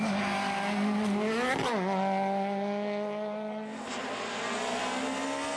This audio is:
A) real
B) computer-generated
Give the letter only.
A